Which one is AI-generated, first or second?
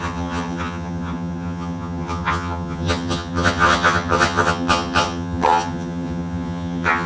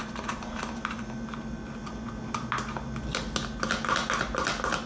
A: first